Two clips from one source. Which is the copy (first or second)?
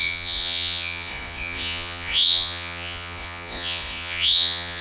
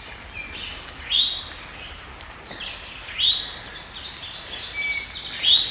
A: first